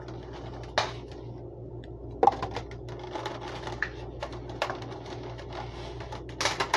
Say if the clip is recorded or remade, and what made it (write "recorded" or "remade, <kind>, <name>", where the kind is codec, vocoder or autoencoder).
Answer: recorded